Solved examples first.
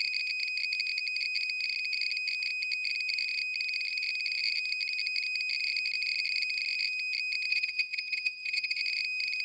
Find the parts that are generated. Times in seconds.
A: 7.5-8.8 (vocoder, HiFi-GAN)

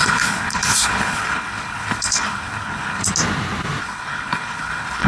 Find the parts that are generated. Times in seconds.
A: 0.0-3.0 (codec, HILCodec); 3.8-5.1

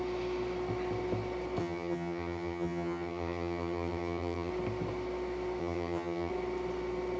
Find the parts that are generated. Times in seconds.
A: 1.6-4.5 (vocoder, HiFi-GAN); 5.6-6.3

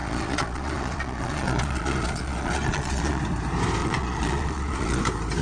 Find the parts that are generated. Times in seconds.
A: 0.0-3.2 (vocoder, Vocos); 3.8-5.0

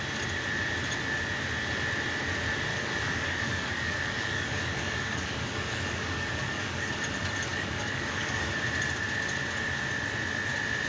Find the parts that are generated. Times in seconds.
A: 2.7-6.9 (codec, DAC); 7.5-8.4

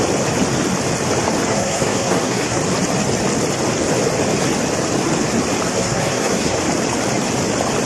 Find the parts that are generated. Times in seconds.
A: 1.5-2.6 (codec, SNAC); 5.7-6.6

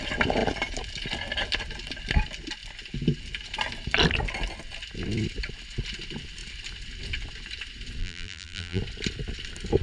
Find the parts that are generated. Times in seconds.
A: 8.0-8.8 (vocoder, BigVGAN v2)

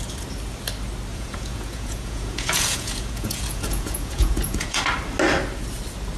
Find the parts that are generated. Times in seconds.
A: 1.1-4.8 (vocoder, Vocos)